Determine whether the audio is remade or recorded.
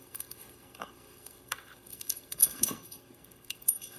remade